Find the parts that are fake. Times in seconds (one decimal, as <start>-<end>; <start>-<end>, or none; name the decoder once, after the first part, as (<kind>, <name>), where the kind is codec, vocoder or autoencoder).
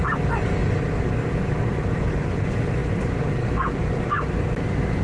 none